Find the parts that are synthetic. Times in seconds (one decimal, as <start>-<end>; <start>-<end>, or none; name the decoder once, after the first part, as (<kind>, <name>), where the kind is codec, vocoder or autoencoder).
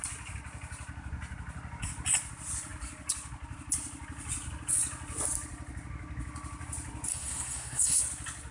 7.1-8.0 (codec, SNAC)